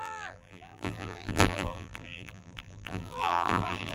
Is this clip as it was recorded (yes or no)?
no